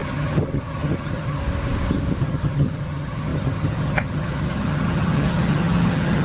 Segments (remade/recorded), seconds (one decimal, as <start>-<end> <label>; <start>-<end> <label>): 0.0-1.4 remade; 1.4-2.2 recorded; 2.2-6.2 remade